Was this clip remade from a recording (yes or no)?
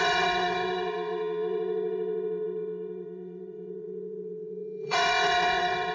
yes